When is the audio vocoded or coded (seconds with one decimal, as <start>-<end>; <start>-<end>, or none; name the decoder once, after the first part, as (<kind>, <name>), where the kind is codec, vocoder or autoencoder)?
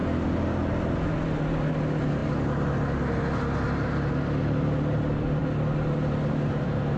none